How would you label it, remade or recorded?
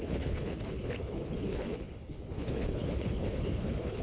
remade